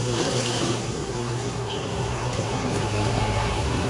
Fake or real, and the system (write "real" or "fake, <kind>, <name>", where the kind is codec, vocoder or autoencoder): fake, codec, SNAC